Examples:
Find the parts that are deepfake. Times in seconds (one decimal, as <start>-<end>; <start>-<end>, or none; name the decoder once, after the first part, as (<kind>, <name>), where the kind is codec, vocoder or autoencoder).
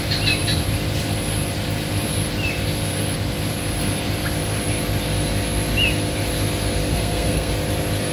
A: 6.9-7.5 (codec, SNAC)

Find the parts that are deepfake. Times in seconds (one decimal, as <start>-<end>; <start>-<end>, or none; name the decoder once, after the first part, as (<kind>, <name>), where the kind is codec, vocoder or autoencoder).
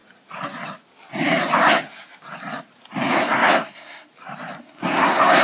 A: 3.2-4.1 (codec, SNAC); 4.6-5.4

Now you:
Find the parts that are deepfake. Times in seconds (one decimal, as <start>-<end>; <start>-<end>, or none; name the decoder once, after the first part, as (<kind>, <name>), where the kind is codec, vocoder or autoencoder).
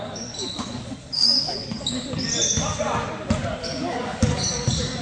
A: 0.0-2.3 (codec, DAC); 3.6-5.0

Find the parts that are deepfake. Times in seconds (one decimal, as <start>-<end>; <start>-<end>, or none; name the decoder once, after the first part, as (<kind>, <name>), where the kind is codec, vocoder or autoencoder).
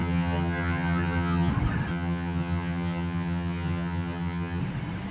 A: 0.0-1.5 (vocoder, HiFi-GAN); 1.9-4.6